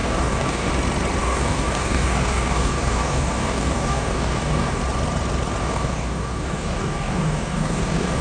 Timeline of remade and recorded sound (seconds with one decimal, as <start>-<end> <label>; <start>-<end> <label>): 0.0-0.7 remade; 0.7-1.2 recorded; 1.2-4.8 remade; 4.8-5.6 recorded; 5.6-8.2 remade